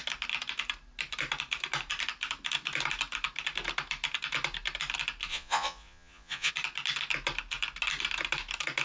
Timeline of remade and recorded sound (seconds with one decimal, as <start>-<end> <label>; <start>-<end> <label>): 0.0-5.3 recorded; 5.3-6.5 remade; 6.5-8.8 recorded